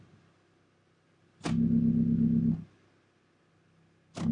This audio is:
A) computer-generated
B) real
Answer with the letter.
B